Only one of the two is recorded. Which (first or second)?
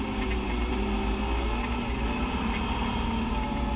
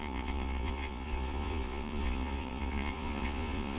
first